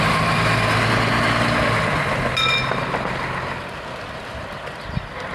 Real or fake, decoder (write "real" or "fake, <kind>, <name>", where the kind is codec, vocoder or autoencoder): real